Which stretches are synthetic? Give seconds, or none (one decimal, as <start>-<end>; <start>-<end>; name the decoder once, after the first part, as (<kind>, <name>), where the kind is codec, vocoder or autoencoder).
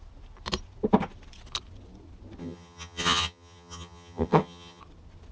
2.4-4.8 (vocoder, HiFi-GAN)